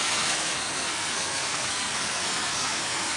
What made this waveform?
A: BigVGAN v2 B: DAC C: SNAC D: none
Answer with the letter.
C